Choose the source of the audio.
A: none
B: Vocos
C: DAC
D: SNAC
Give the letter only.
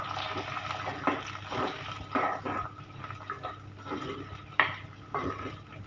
A